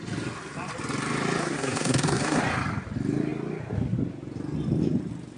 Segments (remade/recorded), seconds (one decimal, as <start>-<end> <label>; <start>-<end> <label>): 0.0-1.4 recorded; 1.4-2.4 remade; 2.4-5.4 recorded